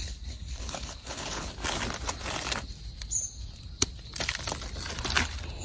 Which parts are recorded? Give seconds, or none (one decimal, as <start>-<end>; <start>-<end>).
1.5-5.6